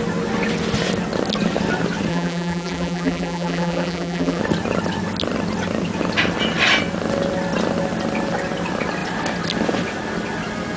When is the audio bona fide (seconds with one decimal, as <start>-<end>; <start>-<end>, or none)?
0.0-2.1; 4.4-10.8

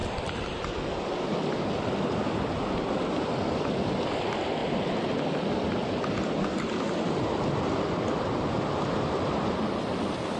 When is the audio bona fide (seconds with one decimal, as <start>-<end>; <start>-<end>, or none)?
1.0-4.6; 5.2-10.4

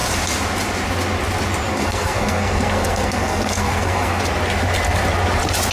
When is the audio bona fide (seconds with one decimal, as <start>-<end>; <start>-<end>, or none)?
0.0-1.7; 4.2-5.7